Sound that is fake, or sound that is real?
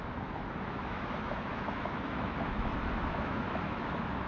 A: fake